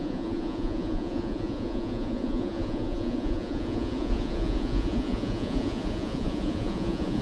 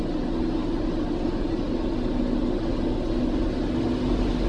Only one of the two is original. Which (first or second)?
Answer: second